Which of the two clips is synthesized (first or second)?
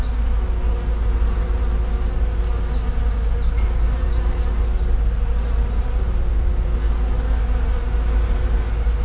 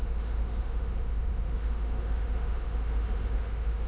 second